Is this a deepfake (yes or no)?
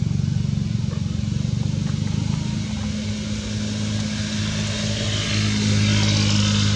no